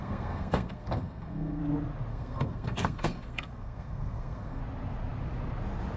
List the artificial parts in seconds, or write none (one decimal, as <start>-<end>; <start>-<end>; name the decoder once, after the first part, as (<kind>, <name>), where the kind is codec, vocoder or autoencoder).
0.0-1.6 (codec, SNAC); 2.1-4.6